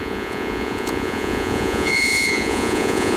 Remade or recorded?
remade